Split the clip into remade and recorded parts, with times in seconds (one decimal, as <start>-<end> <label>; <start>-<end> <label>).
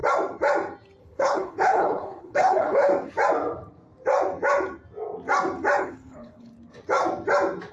0.0-1.0 recorded; 1.0-2.9 remade; 2.9-5.8 recorded; 5.8-6.5 remade; 6.5-7.7 recorded